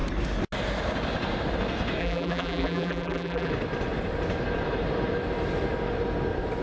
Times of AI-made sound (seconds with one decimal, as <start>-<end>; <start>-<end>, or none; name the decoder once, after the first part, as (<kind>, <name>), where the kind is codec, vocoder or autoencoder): 2.0-3.5 (vocoder, BigVGAN v2)